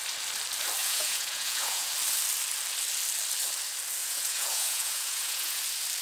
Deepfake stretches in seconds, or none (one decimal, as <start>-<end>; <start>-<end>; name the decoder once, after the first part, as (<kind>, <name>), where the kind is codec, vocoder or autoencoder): 0.8-1.9 (vocoder, Vocos); 4.0-5.6